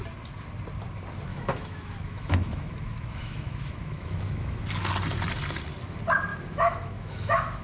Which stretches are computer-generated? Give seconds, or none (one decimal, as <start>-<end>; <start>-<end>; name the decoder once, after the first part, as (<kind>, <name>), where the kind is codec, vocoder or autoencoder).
1.3-4.6 (autoencoder, DAC-VAE); 6.3-7.6